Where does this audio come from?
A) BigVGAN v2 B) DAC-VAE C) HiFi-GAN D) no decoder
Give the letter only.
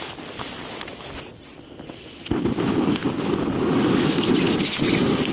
D